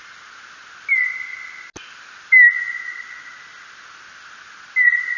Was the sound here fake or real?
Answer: real